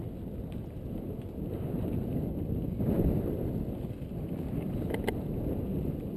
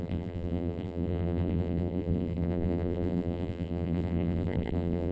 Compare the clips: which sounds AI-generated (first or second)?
second